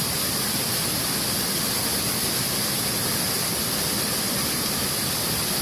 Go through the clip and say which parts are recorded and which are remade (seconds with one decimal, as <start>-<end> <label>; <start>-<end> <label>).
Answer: 0.0-5.6 recorded